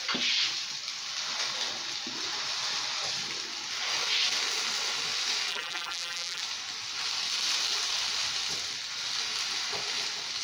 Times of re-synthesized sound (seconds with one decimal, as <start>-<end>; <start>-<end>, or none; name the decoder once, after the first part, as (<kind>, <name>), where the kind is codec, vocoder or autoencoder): 5.5-6.4 (vocoder, BigVGAN v2)